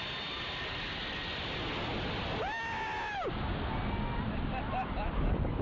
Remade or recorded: recorded